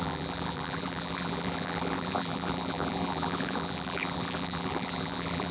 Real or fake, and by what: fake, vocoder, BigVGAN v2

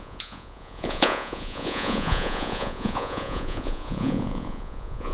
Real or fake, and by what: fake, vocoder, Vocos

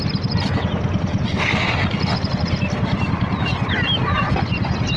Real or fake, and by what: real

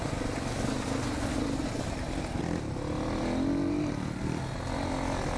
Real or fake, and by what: real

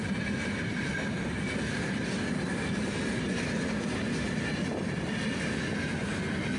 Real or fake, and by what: real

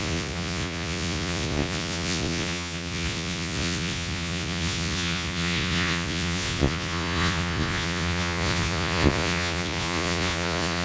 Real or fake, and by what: fake, vocoder, Vocos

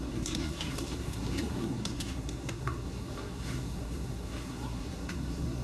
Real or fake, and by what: fake, codec, SNAC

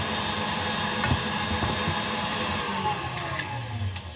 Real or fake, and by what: real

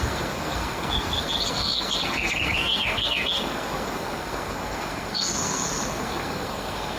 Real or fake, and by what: fake, codec, SNAC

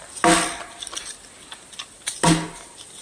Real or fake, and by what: real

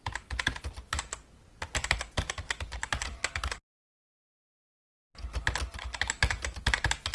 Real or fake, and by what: real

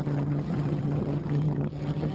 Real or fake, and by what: fake, vocoder, HiFi-GAN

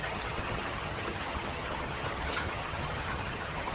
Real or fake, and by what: fake, vocoder, HiFi-GAN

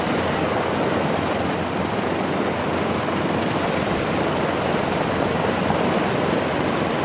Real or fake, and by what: real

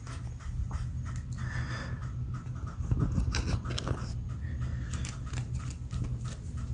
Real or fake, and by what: real